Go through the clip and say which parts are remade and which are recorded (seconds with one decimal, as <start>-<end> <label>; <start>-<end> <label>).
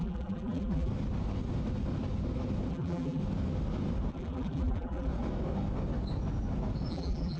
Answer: 0.0-0.9 remade; 0.9-2.7 recorded; 2.7-3.2 remade; 3.2-4.1 recorded; 4.1-5.1 remade; 5.1-6.9 recorded; 6.9-7.4 remade